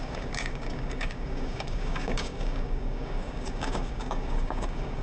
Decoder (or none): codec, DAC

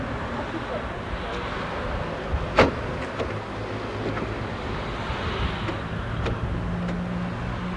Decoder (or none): none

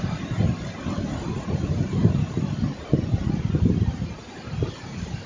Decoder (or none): none